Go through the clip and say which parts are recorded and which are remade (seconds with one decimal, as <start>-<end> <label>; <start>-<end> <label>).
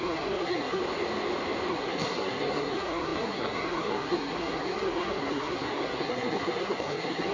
0.0-0.8 remade; 0.8-1.7 recorded; 1.7-7.3 remade